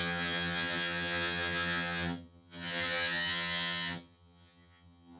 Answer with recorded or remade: remade